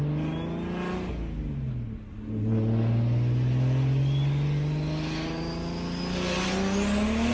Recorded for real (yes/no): yes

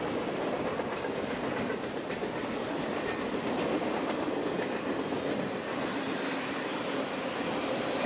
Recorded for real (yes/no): yes